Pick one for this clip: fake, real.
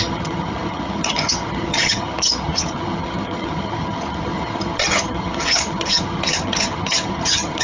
fake